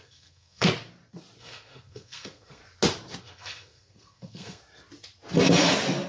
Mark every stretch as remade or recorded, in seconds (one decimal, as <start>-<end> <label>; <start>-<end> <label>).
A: 0.0-0.7 remade; 0.7-1.4 recorded; 1.4-2.6 remade; 2.6-3.2 recorded; 3.2-4.6 remade; 4.6-6.1 recorded